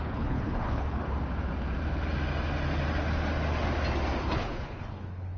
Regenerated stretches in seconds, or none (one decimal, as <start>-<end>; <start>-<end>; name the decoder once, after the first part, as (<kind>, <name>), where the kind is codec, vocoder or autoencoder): 0.0-1.0 (codec, HILCodec); 4.2-5.4

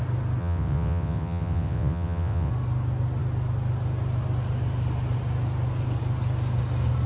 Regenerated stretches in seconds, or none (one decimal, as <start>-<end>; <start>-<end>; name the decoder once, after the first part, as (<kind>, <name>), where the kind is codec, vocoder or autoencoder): 0.4-2.5 (vocoder, WaveNeXt)

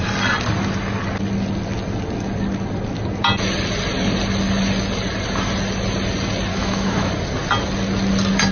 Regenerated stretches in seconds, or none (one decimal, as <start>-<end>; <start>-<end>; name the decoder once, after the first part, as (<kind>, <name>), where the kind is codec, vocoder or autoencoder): 6.5-7.1 (autoencoder, DAC-VAE)

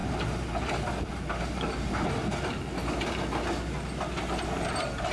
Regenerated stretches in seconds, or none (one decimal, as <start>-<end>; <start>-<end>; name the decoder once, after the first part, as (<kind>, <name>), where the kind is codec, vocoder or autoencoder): none

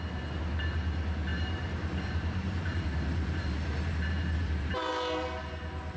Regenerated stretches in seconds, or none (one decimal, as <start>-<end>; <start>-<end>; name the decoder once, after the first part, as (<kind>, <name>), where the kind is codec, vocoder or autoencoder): 1.3-4.9 (vocoder, BigVGAN v2)

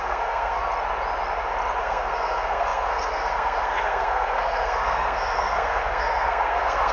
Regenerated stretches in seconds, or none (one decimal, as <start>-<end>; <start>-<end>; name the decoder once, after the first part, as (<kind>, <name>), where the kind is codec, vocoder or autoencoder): 0.0-0.6 (codec, SNAC); 1.8-6.9

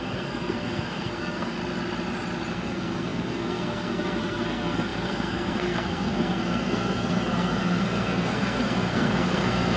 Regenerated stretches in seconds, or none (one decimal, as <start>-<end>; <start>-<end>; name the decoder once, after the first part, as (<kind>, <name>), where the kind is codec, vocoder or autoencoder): 0.0-1.6 (codec, SNAC); 2.5-9.8